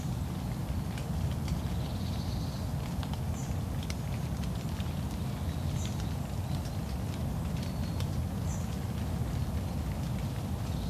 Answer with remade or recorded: recorded